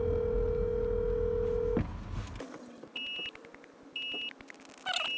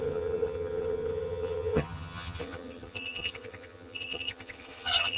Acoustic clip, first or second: first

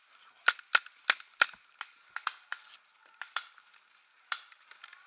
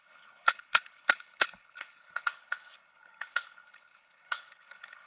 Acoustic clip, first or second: first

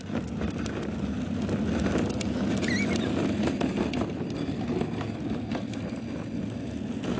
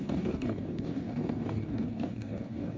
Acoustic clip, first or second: first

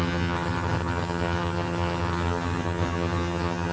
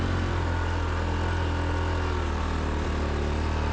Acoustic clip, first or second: second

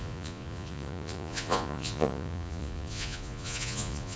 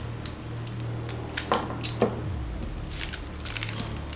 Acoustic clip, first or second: second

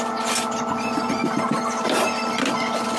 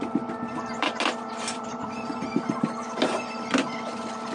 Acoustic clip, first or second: first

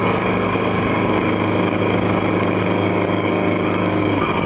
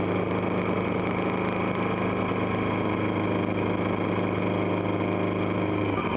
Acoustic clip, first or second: second